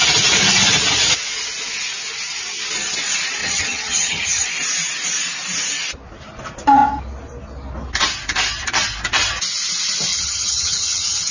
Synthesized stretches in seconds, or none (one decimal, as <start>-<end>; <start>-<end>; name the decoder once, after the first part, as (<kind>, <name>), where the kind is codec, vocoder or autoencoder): 3.4-4.5 (vocoder, HiFi-GAN); 10.1-11.3